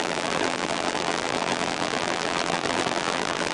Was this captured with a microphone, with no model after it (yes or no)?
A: no